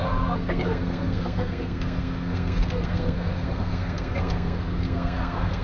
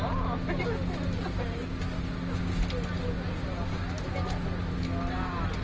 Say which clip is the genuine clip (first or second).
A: second